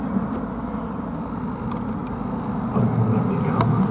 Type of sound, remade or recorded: recorded